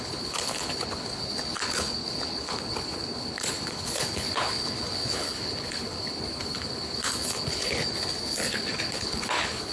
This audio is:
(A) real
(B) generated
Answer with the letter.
B